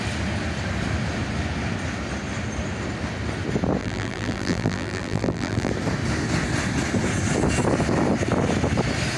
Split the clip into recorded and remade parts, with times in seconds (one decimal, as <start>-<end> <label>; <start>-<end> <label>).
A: 0.0-3.8 recorded; 3.8-5.7 remade; 5.7-9.2 recorded